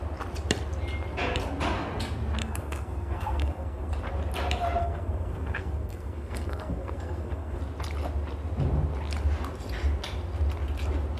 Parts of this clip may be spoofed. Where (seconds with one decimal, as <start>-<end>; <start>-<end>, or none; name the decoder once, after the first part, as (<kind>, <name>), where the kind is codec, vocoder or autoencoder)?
2.4-3.9 (codec, SNAC); 4.8-7.6